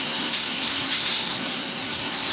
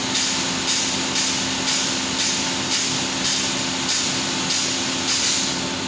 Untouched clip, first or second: second